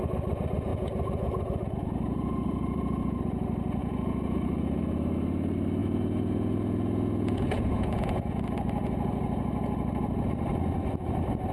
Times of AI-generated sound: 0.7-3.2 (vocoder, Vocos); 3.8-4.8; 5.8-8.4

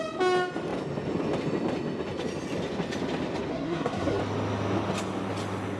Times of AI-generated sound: 3.5-4.2 (codec, SNAC)

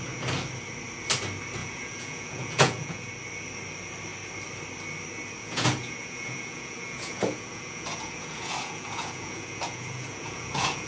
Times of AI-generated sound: 1.6-3.1 (vocoder, Vocos); 5.4-10.9